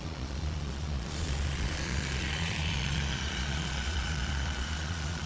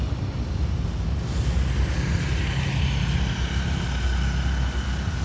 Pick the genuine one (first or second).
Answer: second